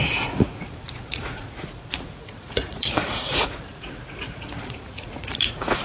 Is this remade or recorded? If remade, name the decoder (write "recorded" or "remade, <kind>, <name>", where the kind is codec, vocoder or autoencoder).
remade, vocoder, Vocos